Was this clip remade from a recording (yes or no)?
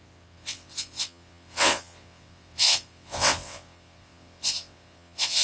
yes